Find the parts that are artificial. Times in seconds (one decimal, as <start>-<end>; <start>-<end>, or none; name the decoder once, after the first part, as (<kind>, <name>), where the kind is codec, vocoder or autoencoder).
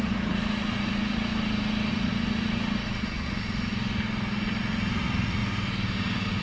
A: 0.0-1.3 (vocoder, Vocos); 1.9-3.7; 4.6-5.4